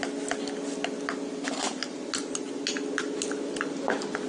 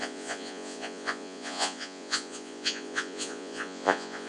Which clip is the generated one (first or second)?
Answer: second